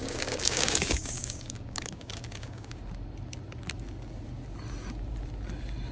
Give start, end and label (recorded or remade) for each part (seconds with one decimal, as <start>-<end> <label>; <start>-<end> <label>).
0.0-2.8 remade; 2.8-5.9 recorded